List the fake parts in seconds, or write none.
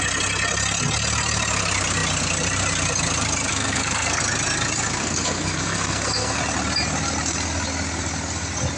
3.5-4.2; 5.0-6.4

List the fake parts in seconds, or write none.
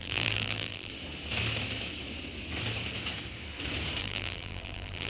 0.0-0.9; 4.0-5.1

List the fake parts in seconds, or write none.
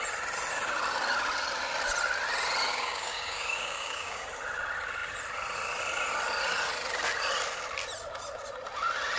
2.7-4.2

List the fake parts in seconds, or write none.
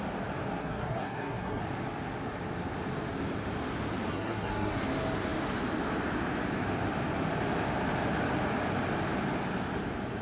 0.6-1.6; 4.1-4.8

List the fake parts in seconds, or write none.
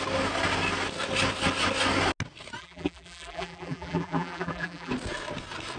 2.6-4.9